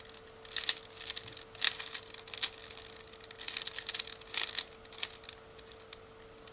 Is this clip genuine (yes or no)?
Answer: yes